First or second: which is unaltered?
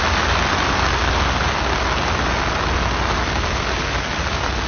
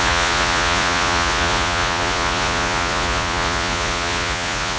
first